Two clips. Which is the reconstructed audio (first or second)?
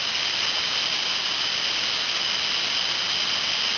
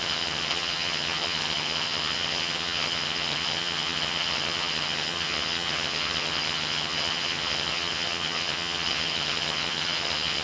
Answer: second